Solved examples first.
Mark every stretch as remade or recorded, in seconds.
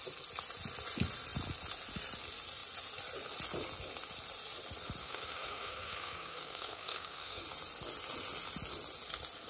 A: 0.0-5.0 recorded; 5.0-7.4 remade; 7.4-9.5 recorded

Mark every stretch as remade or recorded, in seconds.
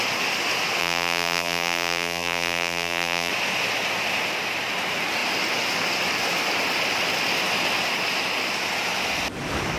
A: 0.0-0.8 recorded; 0.8-3.3 remade; 3.3-9.8 recorded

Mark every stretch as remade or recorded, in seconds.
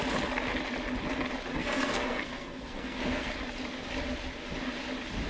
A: 0.0-1.5 recorded; 1.5-3.3 remade; 3.3-5.3 recorded